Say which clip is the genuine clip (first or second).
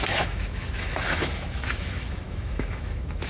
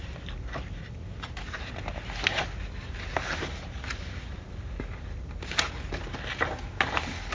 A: second